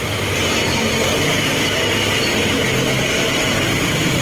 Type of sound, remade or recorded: recorded